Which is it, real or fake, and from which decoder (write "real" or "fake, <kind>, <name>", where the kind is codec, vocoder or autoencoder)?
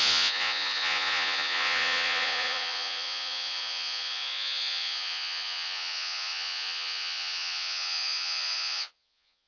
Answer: fake, vocoder, Vocos